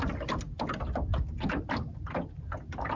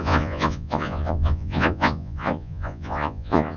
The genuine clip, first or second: first